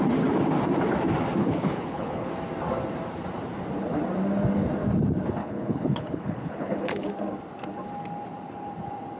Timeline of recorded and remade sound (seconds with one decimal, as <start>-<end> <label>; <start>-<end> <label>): 0.0-1.4 recorded; 1.4-2.3 remade; 2.3-5.4 recorded; 5.4-7.1 remade; 7.1-9.2 recorded